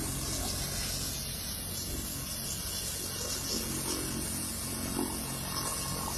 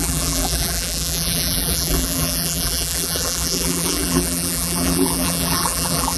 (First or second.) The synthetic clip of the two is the second